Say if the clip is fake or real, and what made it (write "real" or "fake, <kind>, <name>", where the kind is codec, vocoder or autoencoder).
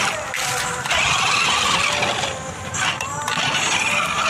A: real